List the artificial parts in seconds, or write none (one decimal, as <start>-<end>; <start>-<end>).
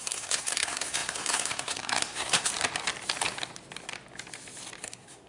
0.0-2.5; 4.8-5.3